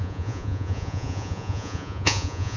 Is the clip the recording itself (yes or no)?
no